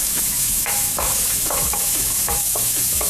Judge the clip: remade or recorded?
remade